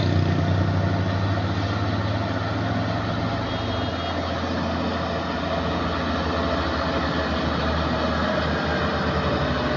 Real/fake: real